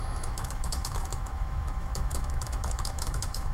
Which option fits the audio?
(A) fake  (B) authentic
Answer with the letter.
A